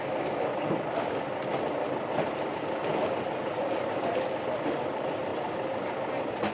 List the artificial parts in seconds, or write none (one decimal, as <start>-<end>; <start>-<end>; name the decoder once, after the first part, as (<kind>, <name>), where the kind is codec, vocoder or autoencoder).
none